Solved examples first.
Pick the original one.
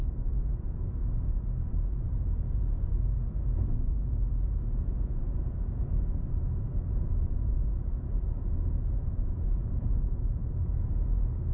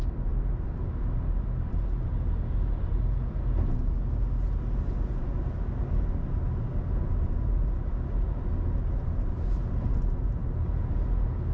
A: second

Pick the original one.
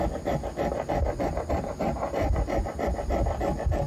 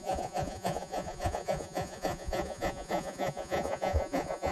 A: first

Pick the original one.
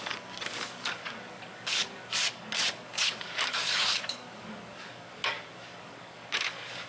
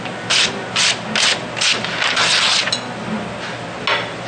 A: second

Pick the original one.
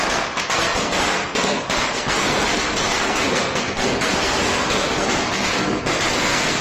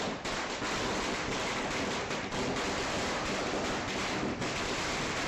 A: second